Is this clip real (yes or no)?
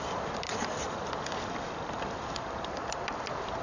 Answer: no